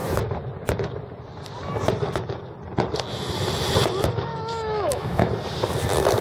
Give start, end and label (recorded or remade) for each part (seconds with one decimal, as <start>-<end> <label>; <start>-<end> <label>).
0.0-4.3 recorded; 4.3-5.3 remade; 5.3-6.2 recorded